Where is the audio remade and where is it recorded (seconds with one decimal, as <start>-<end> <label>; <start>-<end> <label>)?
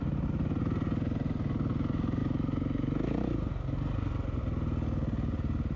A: 0.0-5.8 recorded